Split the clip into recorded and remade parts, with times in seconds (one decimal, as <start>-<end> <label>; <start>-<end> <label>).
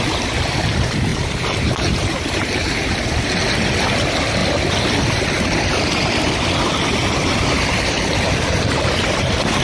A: 0.0-1.1 recorded; 1.1-2.6 remade; 2.6-9.6 recorded